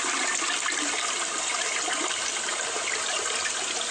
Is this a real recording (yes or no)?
yes